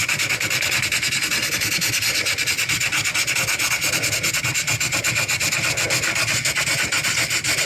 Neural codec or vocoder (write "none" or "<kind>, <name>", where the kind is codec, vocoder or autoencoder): none